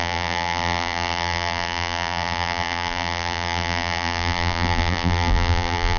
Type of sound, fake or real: fake